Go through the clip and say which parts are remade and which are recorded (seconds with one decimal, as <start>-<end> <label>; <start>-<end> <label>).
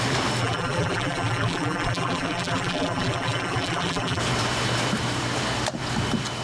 0.0-0.4 recorded; 0.4-4.2 remade; 4.2-6.4 recorded